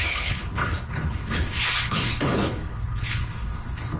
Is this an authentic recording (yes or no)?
no